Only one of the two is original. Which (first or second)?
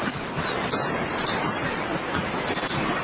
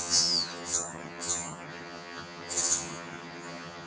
first